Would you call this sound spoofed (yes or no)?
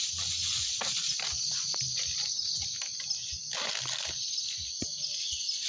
no